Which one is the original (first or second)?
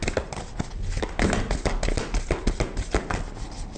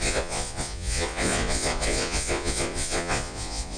first